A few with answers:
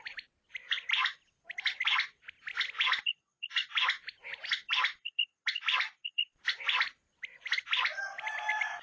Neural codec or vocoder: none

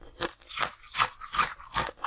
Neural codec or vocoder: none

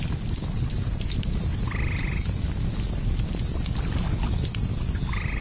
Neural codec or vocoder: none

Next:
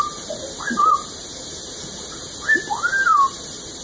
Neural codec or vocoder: vocoder, BigVGAN v2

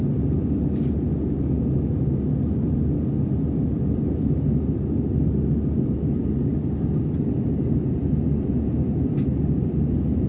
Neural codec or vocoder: none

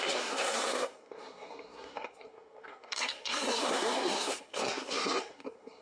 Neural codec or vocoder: codec, SNAC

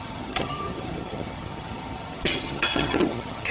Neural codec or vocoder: vocoder, HiFi-GAN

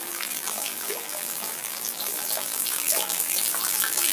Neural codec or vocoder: vocoder, BigVGAN v2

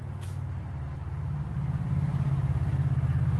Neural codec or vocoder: none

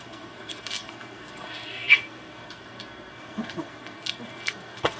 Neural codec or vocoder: codec, SNAC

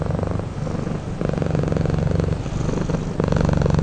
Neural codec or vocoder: none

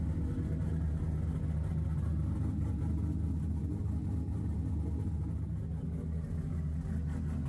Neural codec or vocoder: none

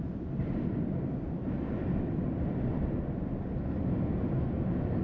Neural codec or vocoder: none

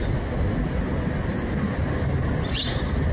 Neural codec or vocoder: none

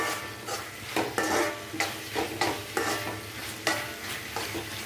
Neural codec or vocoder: none